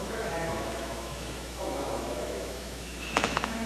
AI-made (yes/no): yes